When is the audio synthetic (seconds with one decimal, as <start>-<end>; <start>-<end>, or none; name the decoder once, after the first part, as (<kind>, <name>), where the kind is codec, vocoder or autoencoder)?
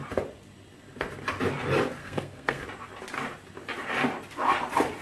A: 2.0-2.6 (codec, SNAC)